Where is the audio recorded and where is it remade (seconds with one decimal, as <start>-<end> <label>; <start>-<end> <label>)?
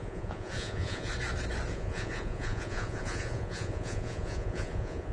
0.0-1.1 remade; 1.1-1.7 recorded; 1.7-5.1 remade